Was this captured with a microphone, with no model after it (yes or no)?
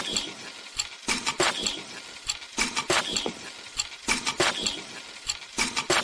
yes